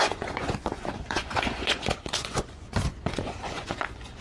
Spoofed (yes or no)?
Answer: yes